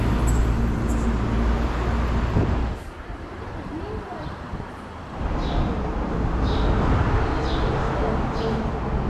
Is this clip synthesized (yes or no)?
no